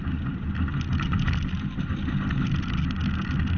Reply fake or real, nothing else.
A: real